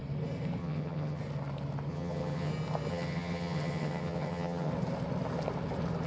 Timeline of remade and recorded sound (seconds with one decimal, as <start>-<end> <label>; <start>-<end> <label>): 0.0-0.6 recorded; 0.6-1.2 remade; 1.2-1.9 recorded; 1.9-2.5 remade; 2.5-2.9 recorded; 2.9-4.7 remade; 4.7-6.1 recorded